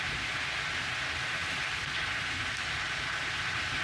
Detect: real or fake real